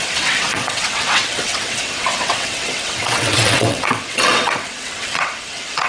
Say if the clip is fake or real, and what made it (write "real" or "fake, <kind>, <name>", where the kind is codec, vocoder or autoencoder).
fake, vocoder, WaveNeXt